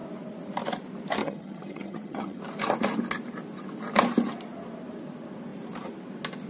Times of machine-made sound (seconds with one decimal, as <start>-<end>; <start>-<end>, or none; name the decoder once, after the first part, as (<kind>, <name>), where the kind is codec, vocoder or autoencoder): 1.2-2.4 (vocoder, HiFi-GAN)